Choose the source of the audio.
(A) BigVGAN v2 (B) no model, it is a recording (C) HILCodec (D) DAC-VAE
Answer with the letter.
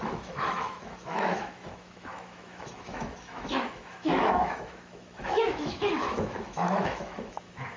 D